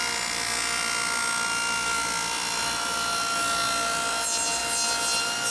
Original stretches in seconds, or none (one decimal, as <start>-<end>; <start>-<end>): 0.0-5.5

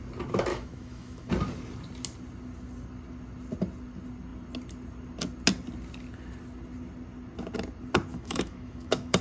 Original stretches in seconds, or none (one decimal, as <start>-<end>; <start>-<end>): 0.0-0.5; 1.3-8.1

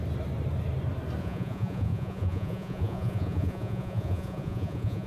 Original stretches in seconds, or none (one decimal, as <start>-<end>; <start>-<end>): 0.0-1.2

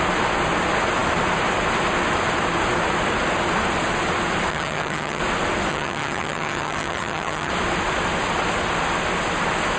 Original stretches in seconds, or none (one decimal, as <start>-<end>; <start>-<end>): 0.0-4.5; 5.2-5.7; 7.5-9.8

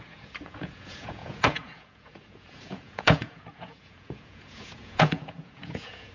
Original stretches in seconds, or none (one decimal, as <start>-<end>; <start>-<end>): none

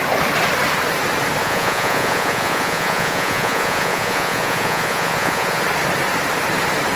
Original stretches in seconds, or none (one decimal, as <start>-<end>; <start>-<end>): 0.0-1.4; 5.6-7.0

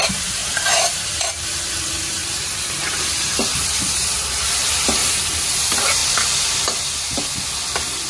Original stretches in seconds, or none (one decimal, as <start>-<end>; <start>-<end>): 5.0-5.6; 6.0-8.1

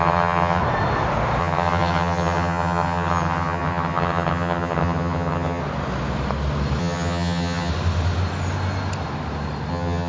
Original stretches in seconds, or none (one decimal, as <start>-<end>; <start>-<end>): 0.6-1.4; 5.6-6.8; 7.7-9.7